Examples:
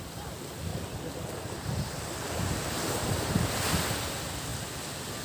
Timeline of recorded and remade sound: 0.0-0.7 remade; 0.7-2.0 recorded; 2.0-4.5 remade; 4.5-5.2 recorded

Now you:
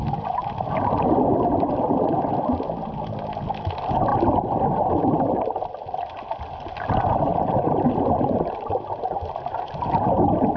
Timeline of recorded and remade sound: 0.0-7.3 recorded; 7.3-8.7 remade; 8.7-10.6 recorded

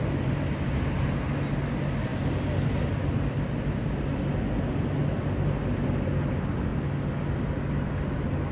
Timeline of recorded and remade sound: 0.0-8.5 recorded